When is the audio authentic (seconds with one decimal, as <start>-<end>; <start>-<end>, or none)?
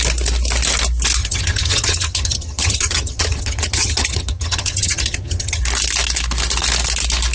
0.0-1.2; 5.6-7.3